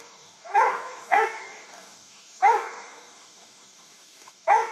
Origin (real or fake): fake